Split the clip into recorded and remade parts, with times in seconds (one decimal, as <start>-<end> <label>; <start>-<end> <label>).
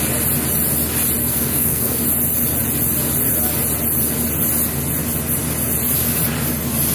0.0-1.2 recorded; 1.2-2.0 remade; 2.0-6.9 recorded